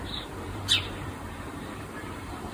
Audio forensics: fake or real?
fake